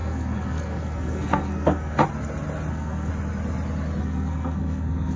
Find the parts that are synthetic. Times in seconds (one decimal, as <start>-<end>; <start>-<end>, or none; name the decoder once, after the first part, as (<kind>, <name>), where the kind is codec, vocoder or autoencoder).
0.0-2.0 (codec, SNAC); 2.7-3.1; 4.0-5.2